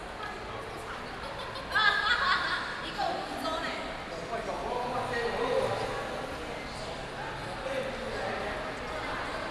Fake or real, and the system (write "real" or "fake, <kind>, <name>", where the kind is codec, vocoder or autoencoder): real